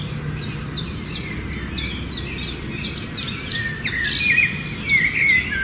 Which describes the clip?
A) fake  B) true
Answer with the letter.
B